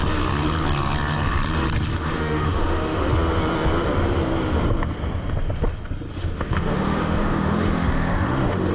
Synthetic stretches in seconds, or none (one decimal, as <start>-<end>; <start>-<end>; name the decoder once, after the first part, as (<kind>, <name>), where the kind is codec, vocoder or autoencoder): 1.9-3.1 (autoencoder, DAC-VAE); 6.1-8.7